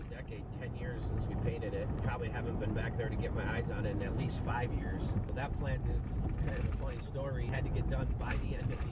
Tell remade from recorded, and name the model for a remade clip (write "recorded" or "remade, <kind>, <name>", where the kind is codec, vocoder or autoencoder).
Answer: recorded